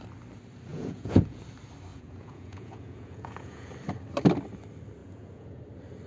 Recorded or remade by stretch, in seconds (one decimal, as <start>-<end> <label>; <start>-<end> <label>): 0.0-0.7 recorded; 0.7-1.4 remade; 1.4-1.9 recorded; 1.9-3.7 remade; 3.7-5.0 recorded; 5.0-5.6 remade; 5.6-6.1 recorded